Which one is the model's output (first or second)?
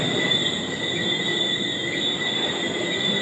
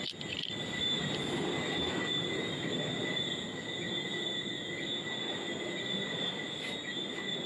first